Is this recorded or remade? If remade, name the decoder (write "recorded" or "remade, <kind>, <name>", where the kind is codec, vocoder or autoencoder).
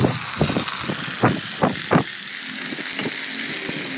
recorded